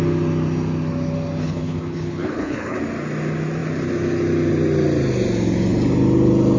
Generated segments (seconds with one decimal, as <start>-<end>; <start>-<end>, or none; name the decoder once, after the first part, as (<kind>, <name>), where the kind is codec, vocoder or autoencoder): 1.4-2.8 (codec, HILCodec)